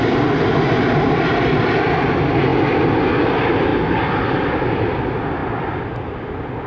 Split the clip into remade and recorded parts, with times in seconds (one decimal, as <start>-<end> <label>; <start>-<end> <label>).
0.0-6.7 recorded